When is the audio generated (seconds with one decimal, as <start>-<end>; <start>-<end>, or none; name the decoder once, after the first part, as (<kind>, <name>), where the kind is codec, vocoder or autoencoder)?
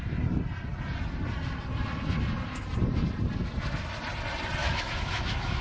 4.6-5.6 (autoencoder, DAC-VAE)